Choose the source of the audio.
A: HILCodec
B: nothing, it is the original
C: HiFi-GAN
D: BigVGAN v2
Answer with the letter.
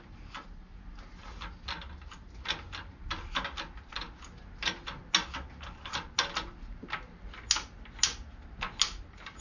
B